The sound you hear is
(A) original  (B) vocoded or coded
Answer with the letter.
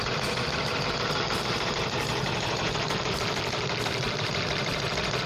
B